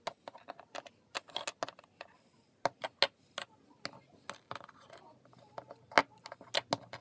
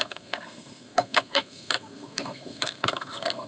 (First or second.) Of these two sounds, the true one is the first